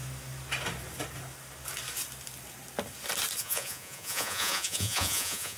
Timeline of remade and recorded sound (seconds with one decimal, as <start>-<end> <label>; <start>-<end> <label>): 0.0-3.4 recorded; 3.4-5.6 remade